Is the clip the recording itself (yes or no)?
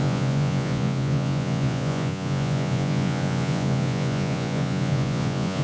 no